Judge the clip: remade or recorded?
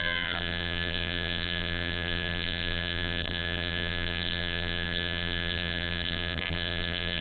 remade